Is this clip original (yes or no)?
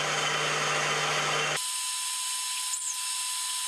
yes